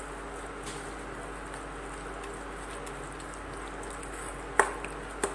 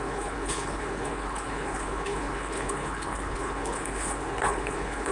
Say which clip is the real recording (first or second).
first